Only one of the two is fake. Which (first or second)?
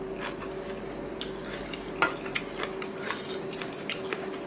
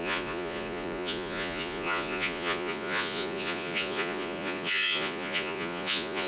second